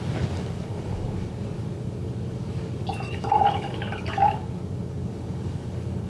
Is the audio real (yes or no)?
no